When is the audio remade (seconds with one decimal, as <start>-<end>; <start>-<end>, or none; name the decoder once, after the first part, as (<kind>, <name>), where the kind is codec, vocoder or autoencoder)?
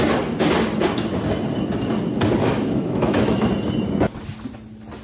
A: 2.4-3.5 (autoencoder, DAC-VAE)